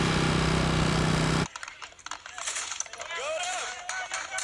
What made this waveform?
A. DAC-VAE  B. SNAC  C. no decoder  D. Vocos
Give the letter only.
C